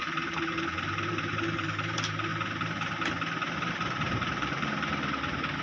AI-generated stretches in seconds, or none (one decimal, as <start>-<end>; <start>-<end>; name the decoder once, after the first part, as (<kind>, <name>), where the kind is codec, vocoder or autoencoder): 0.0-2.3 (vocoder, BigVGAN v2); 3.7-5.6

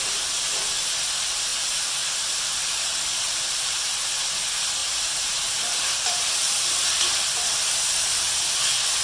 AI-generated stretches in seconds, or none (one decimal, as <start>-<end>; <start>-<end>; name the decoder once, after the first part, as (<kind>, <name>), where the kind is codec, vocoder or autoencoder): 1.5-4.2 (vocoder, BigVGAN v2); 4.8-6.5

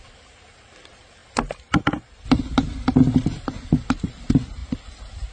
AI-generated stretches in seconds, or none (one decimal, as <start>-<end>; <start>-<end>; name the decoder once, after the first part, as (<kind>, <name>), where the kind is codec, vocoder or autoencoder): none

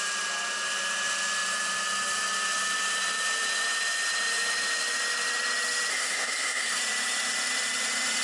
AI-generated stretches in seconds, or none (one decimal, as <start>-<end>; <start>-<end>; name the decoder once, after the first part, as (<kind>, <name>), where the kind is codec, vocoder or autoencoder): 5.9-6.8 (codec, SNAC)

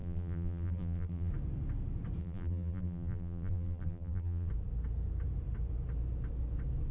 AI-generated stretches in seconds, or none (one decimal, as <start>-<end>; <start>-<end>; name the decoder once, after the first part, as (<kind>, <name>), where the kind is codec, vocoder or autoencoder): 0.0-1.3 (vocoder, BigVGAN v2); 2.2-4.5

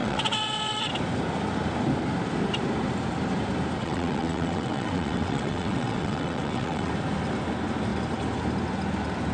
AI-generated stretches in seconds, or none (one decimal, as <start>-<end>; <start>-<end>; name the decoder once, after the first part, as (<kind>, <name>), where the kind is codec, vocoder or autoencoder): 0.0-0.9 (vocoder, WaveNeXt); 3.8-6.9

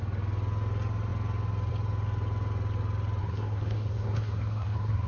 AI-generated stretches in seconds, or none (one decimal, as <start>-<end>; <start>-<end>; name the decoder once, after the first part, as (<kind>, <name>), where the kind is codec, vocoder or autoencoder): 3.2-5.1 (codec, SNAC)